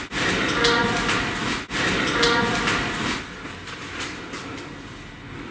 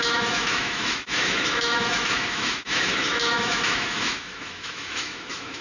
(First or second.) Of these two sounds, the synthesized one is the second